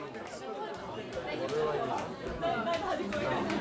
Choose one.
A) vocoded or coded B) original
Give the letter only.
B